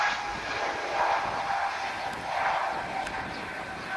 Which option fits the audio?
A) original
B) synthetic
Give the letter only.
A